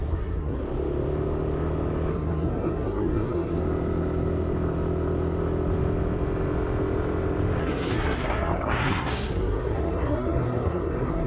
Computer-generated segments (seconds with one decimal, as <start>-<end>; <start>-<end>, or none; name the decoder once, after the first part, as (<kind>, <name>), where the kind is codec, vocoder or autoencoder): 0.0-0.6 (codec, SNAC); 2.1-3.6; 7.6-11.3